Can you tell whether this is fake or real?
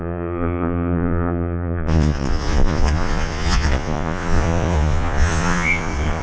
fake